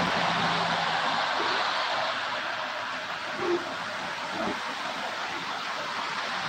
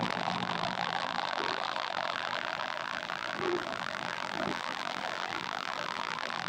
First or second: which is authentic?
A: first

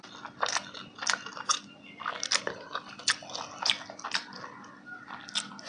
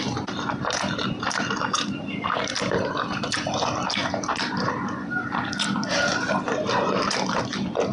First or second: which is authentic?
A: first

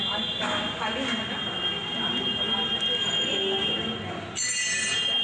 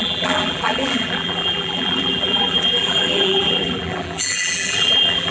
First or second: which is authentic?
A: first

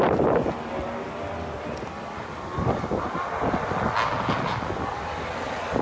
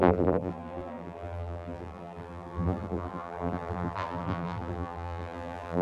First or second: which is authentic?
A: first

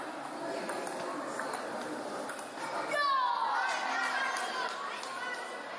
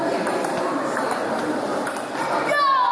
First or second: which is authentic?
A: first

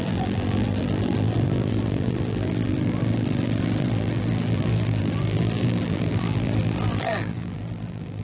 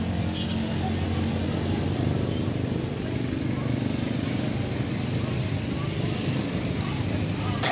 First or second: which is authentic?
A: second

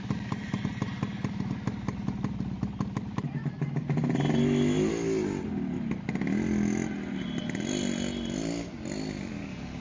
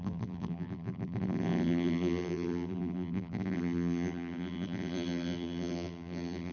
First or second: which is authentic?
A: first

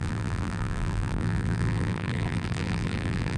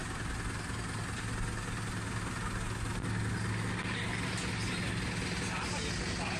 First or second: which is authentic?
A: second